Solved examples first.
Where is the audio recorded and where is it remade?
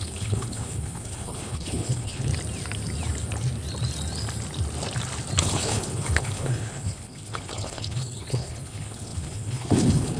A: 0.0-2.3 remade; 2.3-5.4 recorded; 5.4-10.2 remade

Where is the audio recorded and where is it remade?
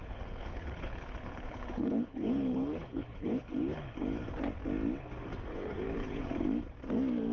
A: 0.0-4.2 remade; 4.2-5.5 recorded; 5.5-6.2 remade; 6.2-7.3 recorded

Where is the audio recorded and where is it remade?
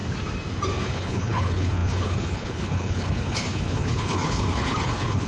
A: 0.0-0.8 recorded; 0.8-5.3 remade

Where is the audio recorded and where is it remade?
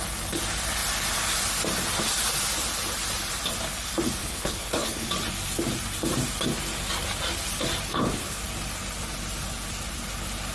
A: 0.0-4.2 recorded; 4.2-5.1 remade; 5.1-7.9 recorded; 7.9-8.4 remade; 8.4-10.5 recorded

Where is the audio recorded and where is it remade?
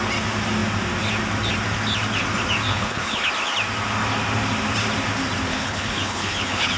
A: 0.0-2.7 recorded; 2.7-3.3 remade; 3.3-5.5 recorded; 5.5-6.8 remade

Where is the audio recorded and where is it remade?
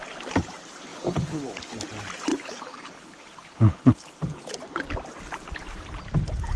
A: 0.0-0.9 recorded; 0.9-1.7 remade; 1.7-2.3 recorded; 2.3-4.4 remade; 4.4-6.6 recorded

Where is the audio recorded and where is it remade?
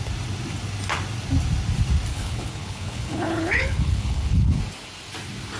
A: 0.0-2.1 recorded; 2.1-4.6 remade; 4.6-5.6 recorded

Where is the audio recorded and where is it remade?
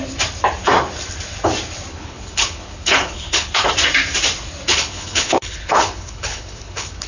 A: 0.0-1.9 recorded; 1.9-3.7 remade; 3.7-4.7 recorded; 4.7-7.1 remade